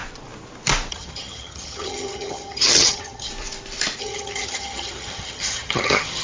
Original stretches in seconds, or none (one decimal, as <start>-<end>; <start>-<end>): 0.0-0.9; 3.3-4.0